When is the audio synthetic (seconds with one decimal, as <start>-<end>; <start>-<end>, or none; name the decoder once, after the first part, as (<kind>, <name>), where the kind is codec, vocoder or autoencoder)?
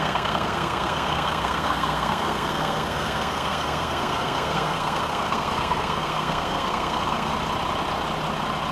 0.0-7.3 (codec, SNAC)